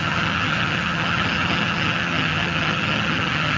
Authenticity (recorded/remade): remade